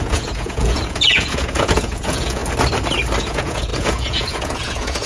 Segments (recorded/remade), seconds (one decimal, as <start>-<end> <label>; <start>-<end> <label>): 0.0-2.4 remade; 2.4-3.2 recorded; 3.2-5.1 remade